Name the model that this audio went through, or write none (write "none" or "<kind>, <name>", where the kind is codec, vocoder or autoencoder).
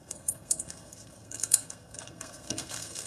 codec, SNAC